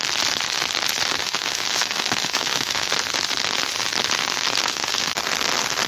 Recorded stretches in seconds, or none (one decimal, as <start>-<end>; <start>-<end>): 0.0-1.2; 2.9-4.6; 5.2-5.9